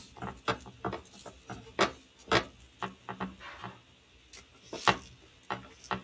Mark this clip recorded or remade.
recorded